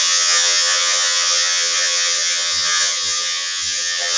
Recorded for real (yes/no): no